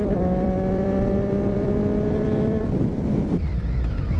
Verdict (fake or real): fake